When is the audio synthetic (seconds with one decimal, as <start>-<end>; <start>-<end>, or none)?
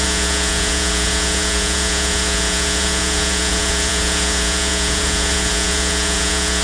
0.0-6.6